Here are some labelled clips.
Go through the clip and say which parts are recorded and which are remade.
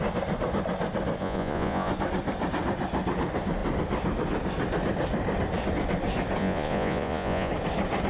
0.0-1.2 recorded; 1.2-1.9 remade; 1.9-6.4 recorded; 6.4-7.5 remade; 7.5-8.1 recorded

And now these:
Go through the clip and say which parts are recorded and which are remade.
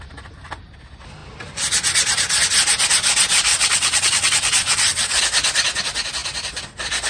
0.0-3.5 recorded; 3.5-5.2 remade; 5.2-7.1 recorded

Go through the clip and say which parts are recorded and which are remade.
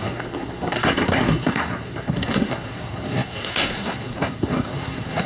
0.0-5.3 remade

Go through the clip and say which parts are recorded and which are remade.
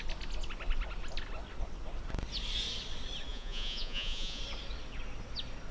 0.0-3.3 recorded; 3.3-4.4 remade; 4.4-5.7 recorded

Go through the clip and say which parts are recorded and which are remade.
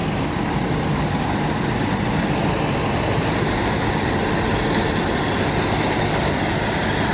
0.0-7.1 recorded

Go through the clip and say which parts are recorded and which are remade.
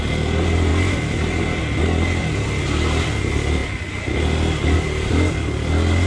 0.0-6.1 recorded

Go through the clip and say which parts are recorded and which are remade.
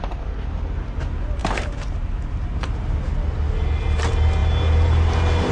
0.0-5.5 recorded